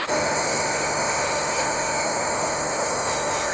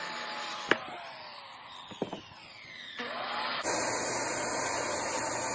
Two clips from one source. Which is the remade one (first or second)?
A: first